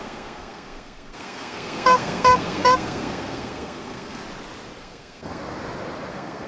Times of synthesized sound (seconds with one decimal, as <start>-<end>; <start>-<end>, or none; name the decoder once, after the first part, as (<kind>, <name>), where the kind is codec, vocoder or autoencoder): 0.0-4.2 (codec, SNAC); 4.8-5.4; 6.1-6.5